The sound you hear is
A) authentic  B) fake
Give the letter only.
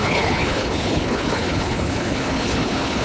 B